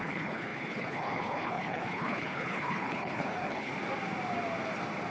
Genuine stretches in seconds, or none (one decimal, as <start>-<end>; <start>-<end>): 3.7-5.1